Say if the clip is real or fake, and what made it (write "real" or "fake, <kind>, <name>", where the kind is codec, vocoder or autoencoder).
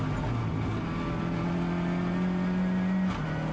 real